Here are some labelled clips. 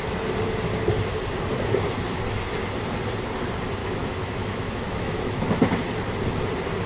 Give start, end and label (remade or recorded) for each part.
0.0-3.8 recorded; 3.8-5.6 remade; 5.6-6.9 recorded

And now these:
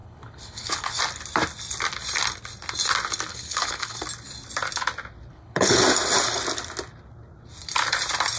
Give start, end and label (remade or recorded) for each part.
0.0-1.0 remade; 1.0-3.3 recorded; 3.3-4.0 remade; 4.0-5.3 recorded; 5.3-5.8 remade; 5.8-8.4 recorded

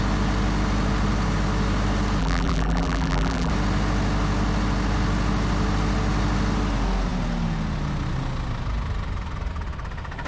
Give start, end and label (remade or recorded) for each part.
0.0-2.2 recorded; 2.2-3.5 remade; 3.5-10.3 recorded

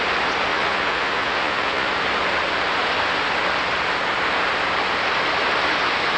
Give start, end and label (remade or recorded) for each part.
0.0-0.5 recorded; 0.5-1.9 remade; 1.9-6.2 recorded

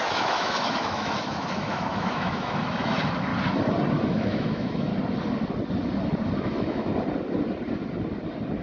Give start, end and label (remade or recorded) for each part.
0.0-3.3 remade; 3.3-4.1 recorded; 4.1-4.9 remade; 4.9-6.4 recorded; 6.4-6.9 remade; 6.9-8.6 recorded

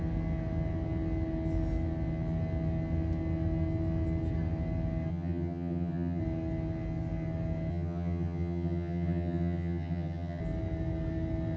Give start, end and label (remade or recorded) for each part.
0.0-5.1 recorded; 5.1-6.2 remade; 6.2-7.7 recorded; 7.7-10.4 remade; 10.4-11.6 recorded